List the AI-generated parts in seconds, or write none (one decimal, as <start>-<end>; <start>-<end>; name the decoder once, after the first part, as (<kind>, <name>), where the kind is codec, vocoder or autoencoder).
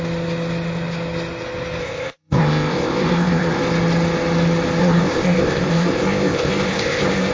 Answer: 1.8-3.6 (codec, ZipCodec); 4.8-7.3